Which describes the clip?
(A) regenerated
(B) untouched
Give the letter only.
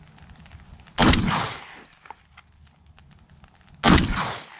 B